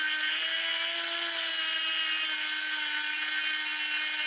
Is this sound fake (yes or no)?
no